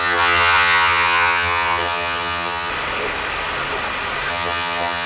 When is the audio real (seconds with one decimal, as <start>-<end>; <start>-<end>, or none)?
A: 2.7-4.3